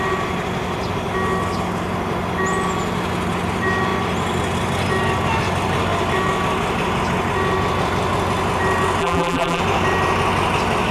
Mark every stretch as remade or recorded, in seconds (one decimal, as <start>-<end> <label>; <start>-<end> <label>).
0.0-9.0 recorded; 9.0-9.6 remade; 9.6-10.9 recorded